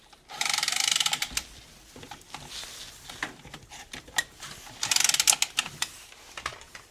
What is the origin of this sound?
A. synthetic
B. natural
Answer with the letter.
B